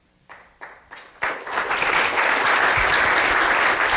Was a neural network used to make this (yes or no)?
yes